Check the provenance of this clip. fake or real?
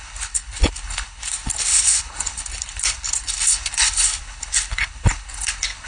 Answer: fake